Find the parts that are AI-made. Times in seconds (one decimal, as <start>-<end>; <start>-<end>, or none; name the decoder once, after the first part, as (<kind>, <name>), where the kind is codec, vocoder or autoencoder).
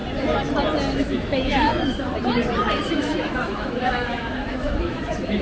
0.9-1.7 (autoencoder, DAC-VAE); 2.9-5.4